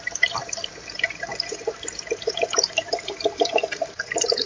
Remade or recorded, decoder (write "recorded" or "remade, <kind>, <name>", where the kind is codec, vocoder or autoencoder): remade, vocoder, BigVGAN v2